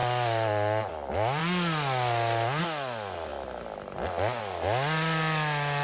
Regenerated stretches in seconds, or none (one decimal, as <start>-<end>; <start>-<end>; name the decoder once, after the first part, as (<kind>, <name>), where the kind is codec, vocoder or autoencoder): none